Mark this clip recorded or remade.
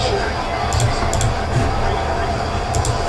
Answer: recorded